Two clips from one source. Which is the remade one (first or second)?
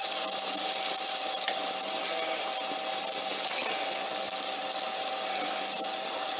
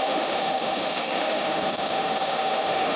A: second